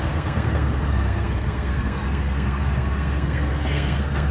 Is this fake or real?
fake